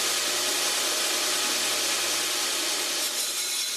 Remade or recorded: recorded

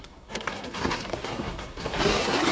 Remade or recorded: remade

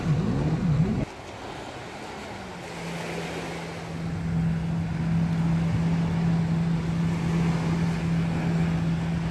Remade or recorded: recorded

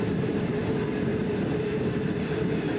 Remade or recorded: recorded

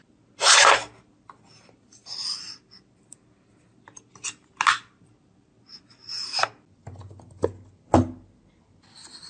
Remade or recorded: recorded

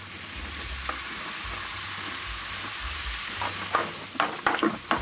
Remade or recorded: recorded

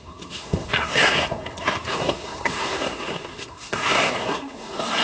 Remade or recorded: remade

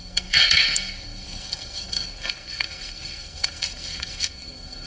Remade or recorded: remade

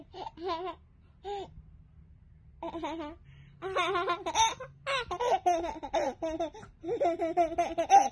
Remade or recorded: recorded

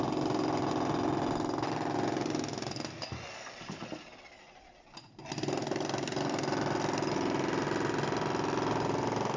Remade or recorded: recorded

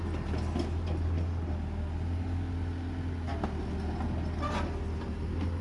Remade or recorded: recorded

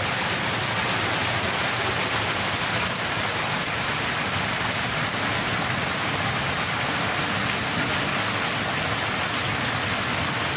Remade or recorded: recorded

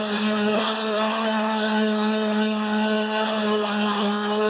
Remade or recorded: remade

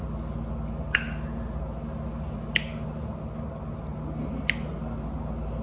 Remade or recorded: recorded